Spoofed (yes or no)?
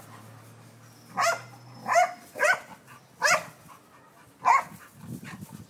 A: no